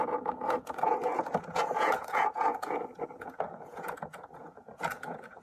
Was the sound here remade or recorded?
remade